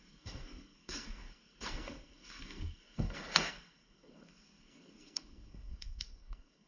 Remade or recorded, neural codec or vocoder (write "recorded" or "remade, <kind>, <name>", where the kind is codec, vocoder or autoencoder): remade, codec, SNAC